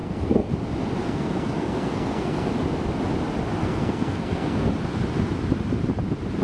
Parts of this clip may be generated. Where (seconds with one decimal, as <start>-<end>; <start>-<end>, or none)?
0.0-0.5; 1.0-2.5; 3.6-4.7